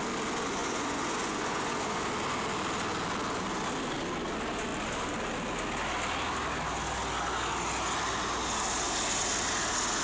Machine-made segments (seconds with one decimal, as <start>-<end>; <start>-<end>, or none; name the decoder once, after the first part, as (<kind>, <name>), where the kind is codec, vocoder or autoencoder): 0.6-2.1 (vocoder, Vocos)